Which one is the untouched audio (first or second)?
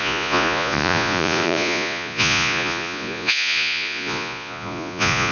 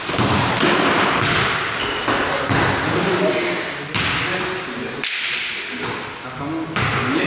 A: second